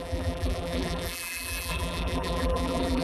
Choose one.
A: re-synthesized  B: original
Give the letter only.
A